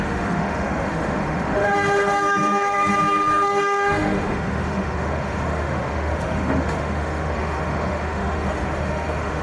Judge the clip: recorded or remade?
remade